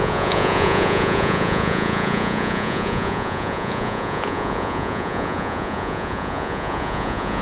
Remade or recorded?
remade